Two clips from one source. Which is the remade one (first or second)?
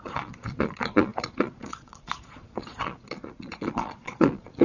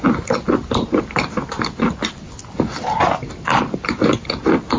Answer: first